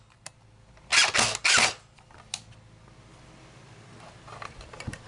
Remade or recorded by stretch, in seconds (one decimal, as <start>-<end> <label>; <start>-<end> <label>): 0.0-5.1 recorded